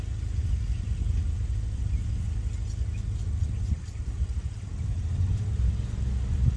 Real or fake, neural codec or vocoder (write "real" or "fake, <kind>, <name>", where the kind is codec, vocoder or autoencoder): real